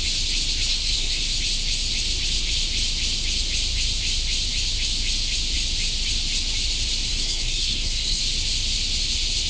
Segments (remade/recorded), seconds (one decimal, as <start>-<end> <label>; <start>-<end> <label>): 0.0-0.7 recorded; 0.7-1.3 remade; 1.3-7.1 recorded; 7.1-8.2 remade; 8.2-9.5 recorded